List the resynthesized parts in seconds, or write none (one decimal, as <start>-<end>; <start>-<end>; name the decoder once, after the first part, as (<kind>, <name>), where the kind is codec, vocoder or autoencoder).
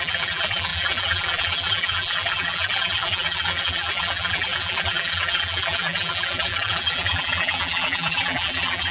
0.0-8.9 (vocoder, BigVGAN v2)